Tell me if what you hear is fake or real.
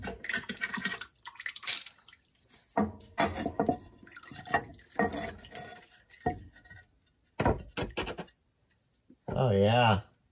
real